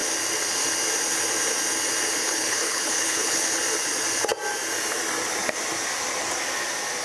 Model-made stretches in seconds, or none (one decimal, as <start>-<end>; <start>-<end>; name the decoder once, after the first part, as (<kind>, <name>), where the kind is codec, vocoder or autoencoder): 2.2-3.6 (codec, HILCodec)